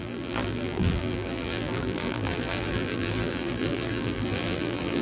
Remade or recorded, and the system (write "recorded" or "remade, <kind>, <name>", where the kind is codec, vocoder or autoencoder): remade, vocoder, BigVGAN v2